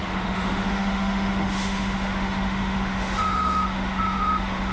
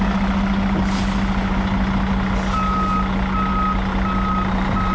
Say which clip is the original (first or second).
second